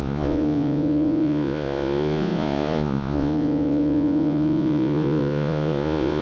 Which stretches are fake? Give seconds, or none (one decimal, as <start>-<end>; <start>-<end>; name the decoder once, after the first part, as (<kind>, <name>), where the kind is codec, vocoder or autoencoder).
0.0-6.2 (vocoder, Vocos)